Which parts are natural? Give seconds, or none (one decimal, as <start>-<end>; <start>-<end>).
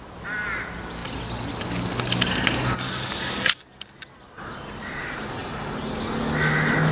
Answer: 0.0-5.4; 5.9-6.9